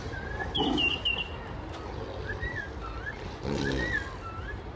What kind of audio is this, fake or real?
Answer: real